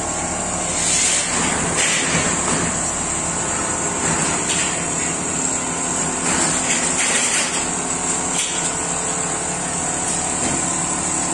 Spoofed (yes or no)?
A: no